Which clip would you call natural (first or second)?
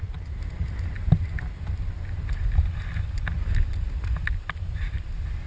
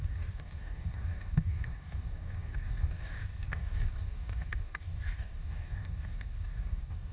first